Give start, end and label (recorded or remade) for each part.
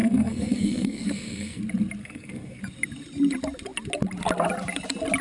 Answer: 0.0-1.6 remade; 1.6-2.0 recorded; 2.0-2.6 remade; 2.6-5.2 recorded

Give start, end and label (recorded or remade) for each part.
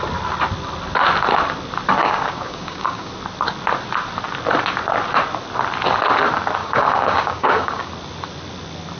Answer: 0.0-2.0 recorded; 2.0-3.1 remade; 3.1-6.6 recorded; 6.6-7.9 remade; 7.9-9.0 recorded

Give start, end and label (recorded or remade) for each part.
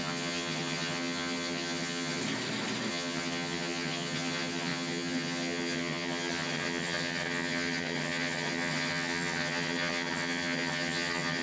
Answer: 0.0-2.2 remade; 2.2-2.9 recorded; 2.9-11.4 remade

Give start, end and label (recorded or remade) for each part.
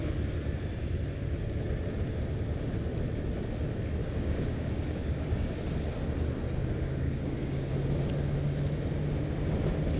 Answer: 0.0-4.0 recorded; 4.0-5.6 remade; 5.6-6.6 recorded; 6.6-7.7 remade; 7.7-10.0 recorded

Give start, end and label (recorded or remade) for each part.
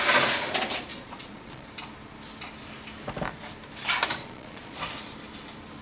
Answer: 0.0-0.9 recorded; 0.9-1.7 remade; 1.7-4.2 recorded; 4.2-4.9 remade; 4.9-5.8 recorded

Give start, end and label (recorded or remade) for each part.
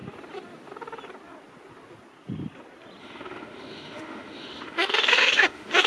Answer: 0.0-3.0 recorded; 3.0-5.9 remade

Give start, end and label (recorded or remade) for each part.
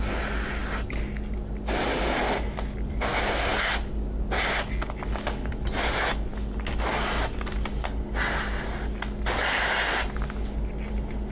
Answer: 0.0-11.3 recorded